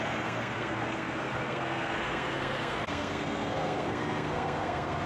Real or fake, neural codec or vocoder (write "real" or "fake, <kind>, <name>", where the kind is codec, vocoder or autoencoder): fake, codec, SNAC